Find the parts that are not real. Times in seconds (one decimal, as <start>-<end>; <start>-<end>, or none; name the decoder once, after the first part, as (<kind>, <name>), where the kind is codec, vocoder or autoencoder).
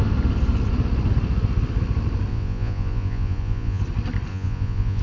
2.3-3.8 (vocoder, Vocos); 4.3-5.0